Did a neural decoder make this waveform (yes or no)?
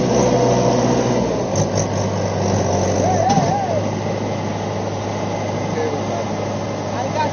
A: no